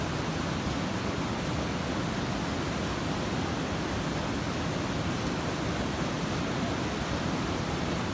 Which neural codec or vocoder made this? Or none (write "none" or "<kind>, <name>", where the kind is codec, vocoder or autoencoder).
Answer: none